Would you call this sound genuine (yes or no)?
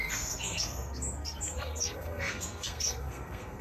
no